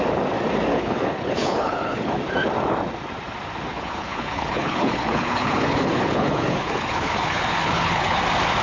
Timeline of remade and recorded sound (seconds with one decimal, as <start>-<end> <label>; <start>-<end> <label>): 0.0-0.7 recorded; 0.7-2.2 remade; 2.2-3.7 recorded; 3.7-8.2 remade; 8.2-8.6 recorded